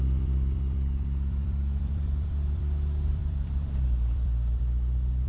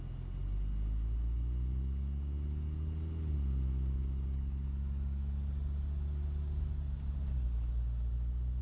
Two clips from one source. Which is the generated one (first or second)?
first